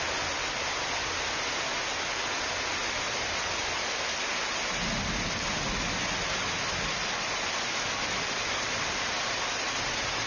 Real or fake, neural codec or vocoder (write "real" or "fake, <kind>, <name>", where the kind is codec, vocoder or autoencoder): real